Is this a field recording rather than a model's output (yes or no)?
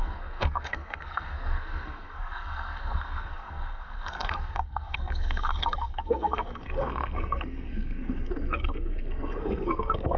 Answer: no